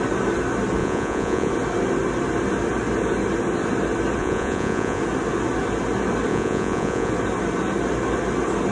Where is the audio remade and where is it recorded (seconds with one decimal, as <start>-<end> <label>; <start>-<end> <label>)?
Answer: 0.0-0.8 recorded; 0.8-1.5 remade; 1.5-4.2 recorded; 4.2-5.0 remade; 5.0-6.3 recorded; 6.3-7.1 remade; 7.1-8.7 recorded